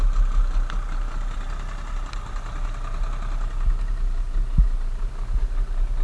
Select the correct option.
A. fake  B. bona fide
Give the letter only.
B